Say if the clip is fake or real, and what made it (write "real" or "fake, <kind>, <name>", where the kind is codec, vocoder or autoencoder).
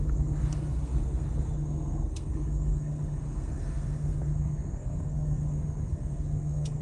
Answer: fake, codec, SNAC